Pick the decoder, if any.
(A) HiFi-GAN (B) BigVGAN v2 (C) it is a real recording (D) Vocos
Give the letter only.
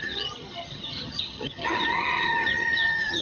A